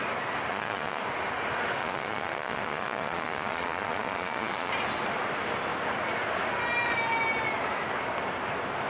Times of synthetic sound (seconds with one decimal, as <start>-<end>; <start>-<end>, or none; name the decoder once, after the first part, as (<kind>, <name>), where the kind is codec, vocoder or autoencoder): 0.5-1.0 (vocoder, Vocos); 1.8-4.7